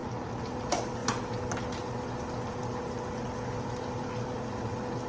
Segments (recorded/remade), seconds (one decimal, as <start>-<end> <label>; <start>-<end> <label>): 0.0-5.1 recorded